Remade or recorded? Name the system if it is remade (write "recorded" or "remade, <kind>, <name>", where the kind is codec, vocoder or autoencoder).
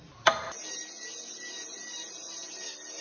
recorded